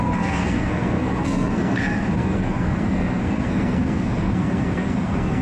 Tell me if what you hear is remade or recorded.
remade